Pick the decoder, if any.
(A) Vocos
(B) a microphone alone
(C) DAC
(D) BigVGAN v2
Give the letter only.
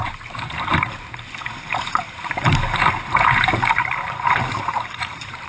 D